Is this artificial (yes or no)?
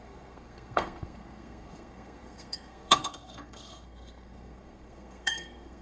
yes